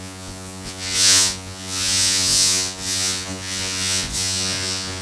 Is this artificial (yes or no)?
yes